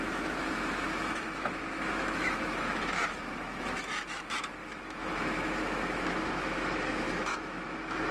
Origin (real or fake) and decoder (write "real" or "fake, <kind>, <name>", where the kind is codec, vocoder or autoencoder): fake, autoencoder, DAC-VAE